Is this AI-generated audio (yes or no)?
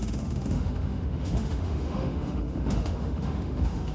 yes